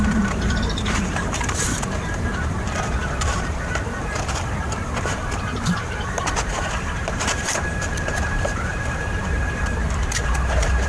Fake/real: fake